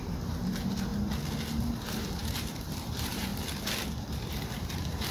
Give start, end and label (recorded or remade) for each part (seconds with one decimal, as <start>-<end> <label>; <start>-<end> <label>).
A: 0.0-0.9 remade; 0.9-1.6 recorded; 1.6-3.3 remade; 3.3-4.1 recorded; 4.1-5.1 remade